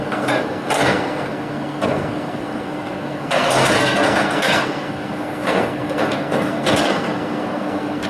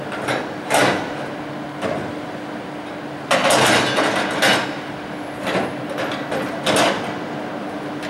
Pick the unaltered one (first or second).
second